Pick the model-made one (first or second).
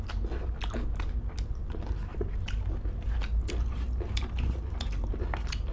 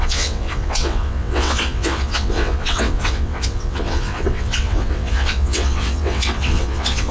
second